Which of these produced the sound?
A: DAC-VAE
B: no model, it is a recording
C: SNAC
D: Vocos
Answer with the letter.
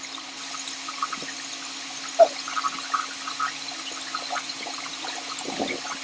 B